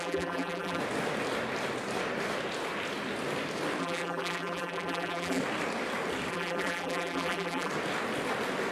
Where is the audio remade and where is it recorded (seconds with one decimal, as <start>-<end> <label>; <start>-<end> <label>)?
0.0-0.8 remade; 0.8-3.8 recorded; 3.8-5.4 remade; 5.4-6.3 recorded; 6.3-7.7 remade; 7.7-8.7 recorded